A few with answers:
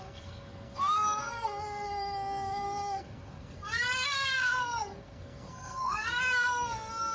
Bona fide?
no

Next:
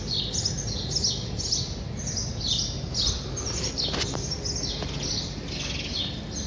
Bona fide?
yes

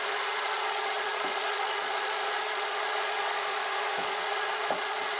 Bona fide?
no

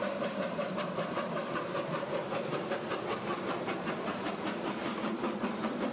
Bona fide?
no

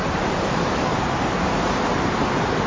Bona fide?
yes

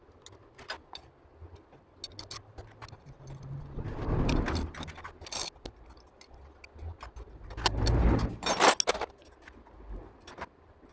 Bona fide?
yes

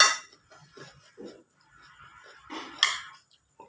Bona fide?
yes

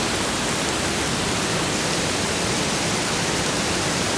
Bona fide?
no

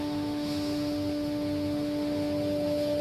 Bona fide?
no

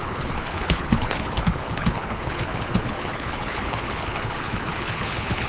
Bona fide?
no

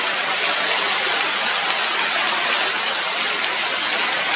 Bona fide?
yes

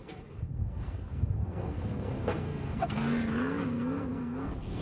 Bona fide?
no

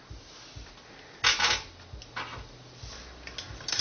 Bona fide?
yes